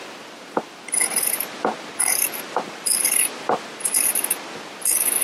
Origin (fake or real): real